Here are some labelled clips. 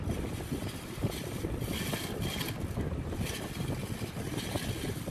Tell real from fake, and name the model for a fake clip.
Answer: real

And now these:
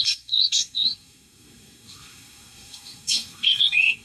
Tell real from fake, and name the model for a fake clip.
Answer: fake, codec, SNAC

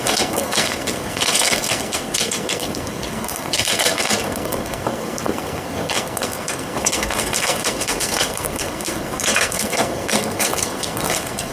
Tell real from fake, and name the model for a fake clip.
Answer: fake, codec, SNAC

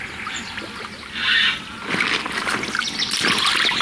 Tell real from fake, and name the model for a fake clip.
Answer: real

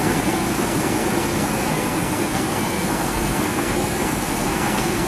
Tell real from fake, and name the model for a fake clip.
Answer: fake, codec, SNAC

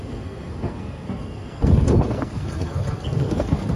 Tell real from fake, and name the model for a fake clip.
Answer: fake, codec, SNAC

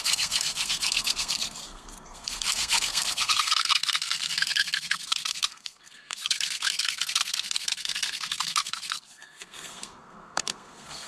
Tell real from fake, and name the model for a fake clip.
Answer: fake, codec, SNAC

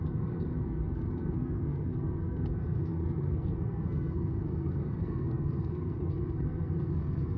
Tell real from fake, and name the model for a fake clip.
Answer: fake, codec, SNAC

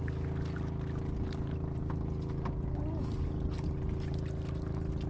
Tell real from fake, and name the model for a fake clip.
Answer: real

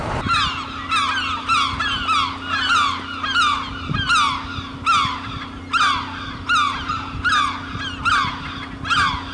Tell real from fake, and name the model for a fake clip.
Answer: real